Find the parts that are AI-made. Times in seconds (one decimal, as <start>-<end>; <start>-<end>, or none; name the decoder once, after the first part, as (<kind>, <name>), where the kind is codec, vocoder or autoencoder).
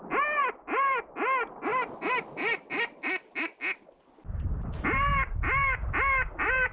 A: 0.4-1.0 (vocoder, BigVGAN v2)